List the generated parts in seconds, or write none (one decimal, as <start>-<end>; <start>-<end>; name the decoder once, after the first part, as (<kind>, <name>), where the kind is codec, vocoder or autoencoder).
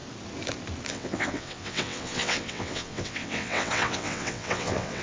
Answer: 0.9-5.0 (vocoder, WaveNeXt)